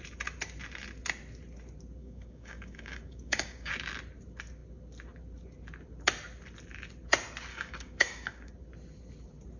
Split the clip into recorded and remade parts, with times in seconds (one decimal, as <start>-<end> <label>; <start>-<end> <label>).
0.0-2.0 recorded; 2.0-3.7 remade; 3.7-7.5 recorded; 7.5-8.5 remade; 8.5-9.6 recorded